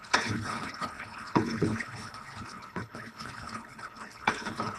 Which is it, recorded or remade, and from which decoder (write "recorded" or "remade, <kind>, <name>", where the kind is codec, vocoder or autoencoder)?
remade, codec, HILCodec